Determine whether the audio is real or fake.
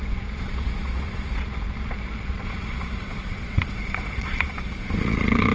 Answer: fake